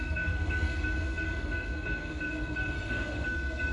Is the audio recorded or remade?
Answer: remade